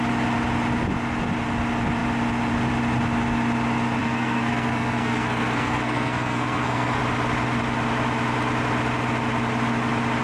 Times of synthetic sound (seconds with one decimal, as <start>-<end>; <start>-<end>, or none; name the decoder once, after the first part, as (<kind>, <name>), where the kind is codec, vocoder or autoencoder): 4.0-7.0 (codec, SNAC)